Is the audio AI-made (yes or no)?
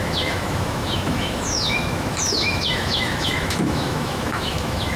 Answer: yes